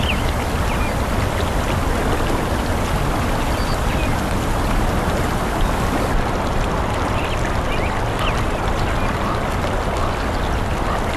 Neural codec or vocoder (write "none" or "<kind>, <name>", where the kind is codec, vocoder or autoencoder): none